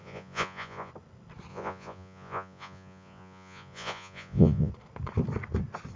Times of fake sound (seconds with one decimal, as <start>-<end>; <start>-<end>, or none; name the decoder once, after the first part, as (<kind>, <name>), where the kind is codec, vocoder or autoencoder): 0.0-0.9 (vocoder, Vocos); 1.5-4.7

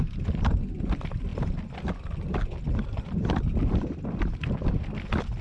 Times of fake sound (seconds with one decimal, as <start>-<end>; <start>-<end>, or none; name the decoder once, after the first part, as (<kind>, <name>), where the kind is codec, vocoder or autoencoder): none

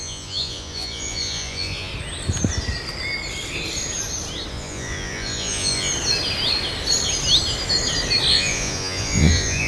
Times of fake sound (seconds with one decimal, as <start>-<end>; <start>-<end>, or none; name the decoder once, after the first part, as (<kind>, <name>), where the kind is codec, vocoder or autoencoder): 0.0-1.9 (vocoder, Vocos); 4.5-5.9; 8.3-9.7

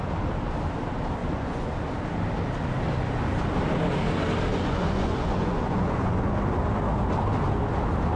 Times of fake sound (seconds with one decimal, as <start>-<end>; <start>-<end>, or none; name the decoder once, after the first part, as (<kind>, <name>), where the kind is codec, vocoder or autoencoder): 1.2-1.7 (vocoder, Vocos); 4.5-6.3

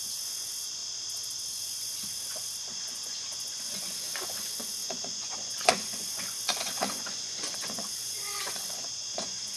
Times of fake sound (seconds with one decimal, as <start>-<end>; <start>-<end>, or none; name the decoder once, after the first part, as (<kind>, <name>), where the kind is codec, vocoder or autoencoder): 0.0-0.8 (vocoder, Vocos); 1.4-9.6

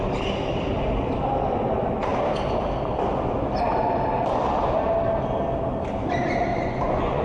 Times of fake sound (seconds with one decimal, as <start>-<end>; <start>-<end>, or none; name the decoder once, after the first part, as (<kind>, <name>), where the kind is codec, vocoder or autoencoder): 6.5-7.2 (vocoder, Vocos)

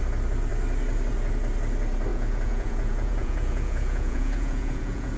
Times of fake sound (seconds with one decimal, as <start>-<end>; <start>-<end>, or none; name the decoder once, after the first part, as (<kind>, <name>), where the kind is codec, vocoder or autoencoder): 2.1-5.2 (vocoder, Vocos)